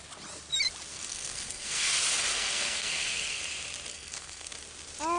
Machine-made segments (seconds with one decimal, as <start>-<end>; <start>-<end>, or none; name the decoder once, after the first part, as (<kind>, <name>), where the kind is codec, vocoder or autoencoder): 0.9-1.9 (codec, SNAC); 2.3-3.4; 3.9-4.5